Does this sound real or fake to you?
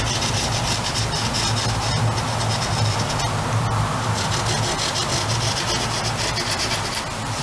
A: real